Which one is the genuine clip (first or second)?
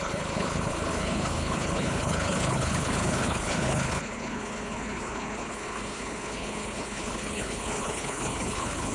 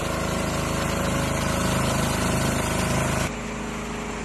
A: second